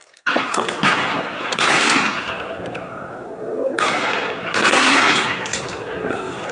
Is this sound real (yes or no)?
no